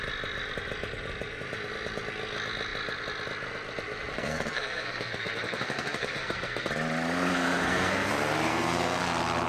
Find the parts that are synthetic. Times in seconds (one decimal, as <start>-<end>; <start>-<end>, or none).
4.1-6.7; 7.3-8.1; 8.5-9.0